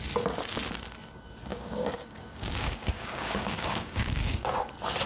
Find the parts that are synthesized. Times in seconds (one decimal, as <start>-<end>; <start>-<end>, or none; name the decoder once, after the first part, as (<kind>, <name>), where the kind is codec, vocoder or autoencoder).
1.5-4.6 (codec, DAC)